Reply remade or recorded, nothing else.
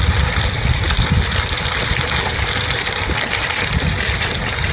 recorded